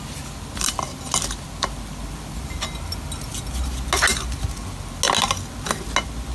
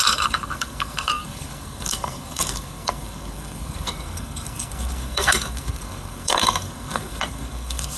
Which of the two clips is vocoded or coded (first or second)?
second